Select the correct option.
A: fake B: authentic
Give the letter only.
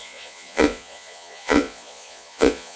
A